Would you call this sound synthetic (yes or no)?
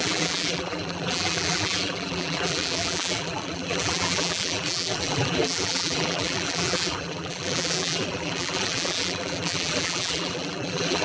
yes